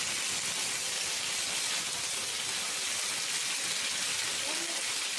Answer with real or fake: real